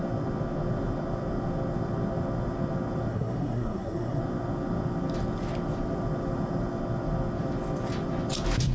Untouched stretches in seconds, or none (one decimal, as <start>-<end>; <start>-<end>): 0.0-3.1; 4.2-8.7